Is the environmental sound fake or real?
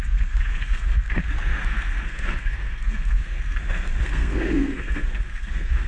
fake